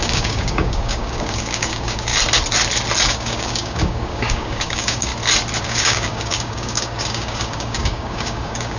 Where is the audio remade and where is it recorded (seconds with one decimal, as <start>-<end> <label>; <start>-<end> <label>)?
0.0-2.1 remade; 2.1-3.1 recorded; 3.1-5.1 remade; 5.1-5.6 recorded; 5.6-8.8 remade